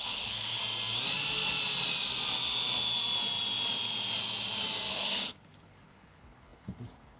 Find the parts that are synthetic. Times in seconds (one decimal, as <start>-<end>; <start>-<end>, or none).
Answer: 0.0-0.6; 4.9-7.2